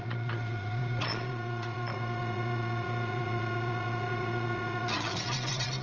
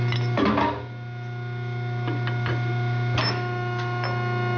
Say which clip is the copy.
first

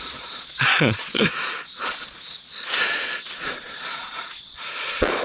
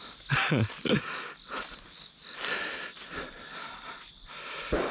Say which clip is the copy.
first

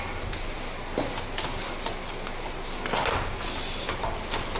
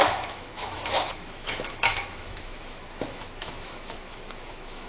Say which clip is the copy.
second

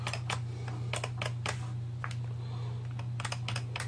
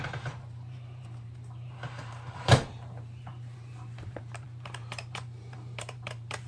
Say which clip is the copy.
second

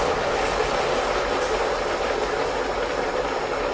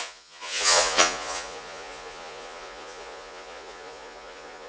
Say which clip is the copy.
second